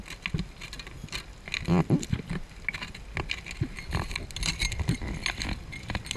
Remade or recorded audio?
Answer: recorded